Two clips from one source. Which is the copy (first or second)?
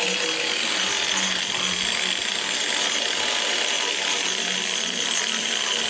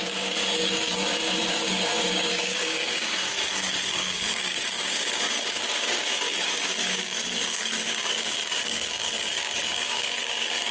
second